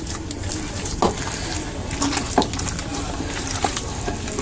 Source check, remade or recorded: recorded